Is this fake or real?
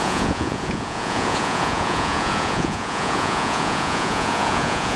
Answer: fake